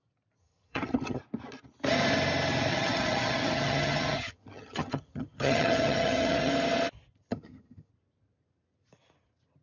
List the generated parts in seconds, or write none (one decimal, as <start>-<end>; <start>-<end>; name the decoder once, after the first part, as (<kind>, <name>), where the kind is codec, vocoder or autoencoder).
0.4-1.2 (vocoder, HiFi-GAN); 2.7-6.5; 7.3-7.9